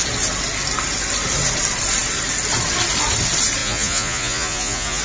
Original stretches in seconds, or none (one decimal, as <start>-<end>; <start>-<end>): 0.0-3.6